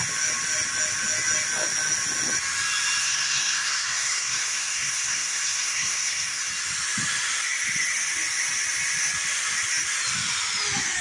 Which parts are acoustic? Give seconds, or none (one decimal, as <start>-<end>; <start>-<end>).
0.0-3.0; 6.4-11.0